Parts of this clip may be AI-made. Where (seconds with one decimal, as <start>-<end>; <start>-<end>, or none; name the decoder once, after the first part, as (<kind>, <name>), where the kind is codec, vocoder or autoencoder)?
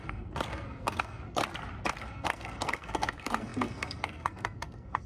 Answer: 0.0-1.4 (codec, SNAC); 2.0-5.1